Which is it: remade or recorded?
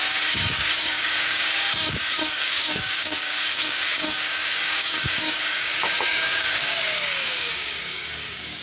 remade